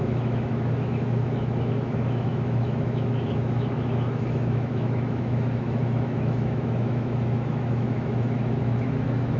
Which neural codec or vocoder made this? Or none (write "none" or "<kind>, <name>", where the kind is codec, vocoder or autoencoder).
autoencoder, DAC-VAE